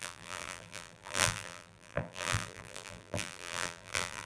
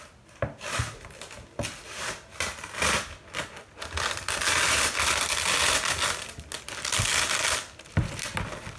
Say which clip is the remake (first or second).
first